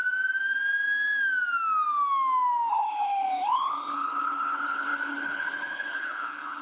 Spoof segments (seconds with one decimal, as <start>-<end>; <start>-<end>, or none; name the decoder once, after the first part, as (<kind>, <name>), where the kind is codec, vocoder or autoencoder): 2.7-6.6 (codec, HILCodec)